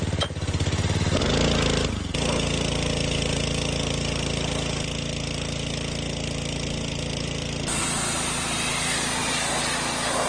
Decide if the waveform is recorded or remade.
recorded